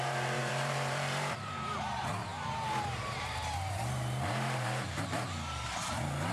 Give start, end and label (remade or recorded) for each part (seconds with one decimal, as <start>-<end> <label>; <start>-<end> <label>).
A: 0.0-6.3 remade